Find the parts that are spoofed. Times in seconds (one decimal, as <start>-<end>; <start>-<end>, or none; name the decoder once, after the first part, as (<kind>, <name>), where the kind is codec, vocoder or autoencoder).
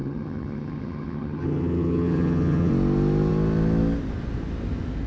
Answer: 0.0-2.7 (vocoder, HiFi-GAN)